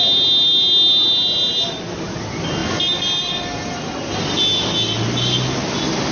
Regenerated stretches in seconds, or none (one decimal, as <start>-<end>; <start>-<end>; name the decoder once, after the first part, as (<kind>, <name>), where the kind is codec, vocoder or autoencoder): none